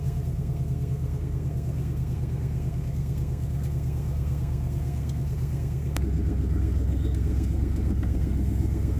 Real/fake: fake